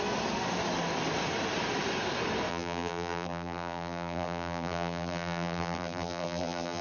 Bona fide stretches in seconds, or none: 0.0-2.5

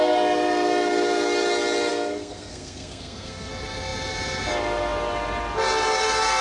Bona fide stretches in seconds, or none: 0.0-1.9; 3.5-6.4

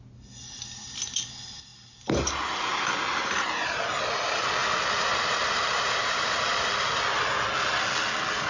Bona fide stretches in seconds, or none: 0.0-4.6; 6.7-8.5